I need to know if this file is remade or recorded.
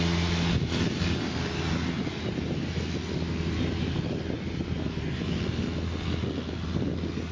recorded